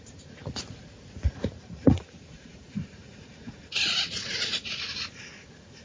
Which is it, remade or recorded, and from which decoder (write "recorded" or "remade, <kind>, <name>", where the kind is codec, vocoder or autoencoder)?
remade, vocoder, Vocos